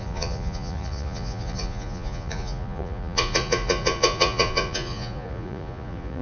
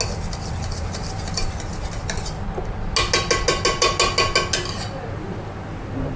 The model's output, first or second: first